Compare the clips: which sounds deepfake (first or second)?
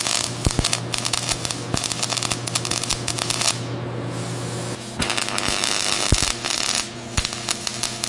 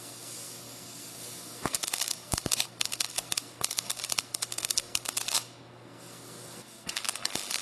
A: second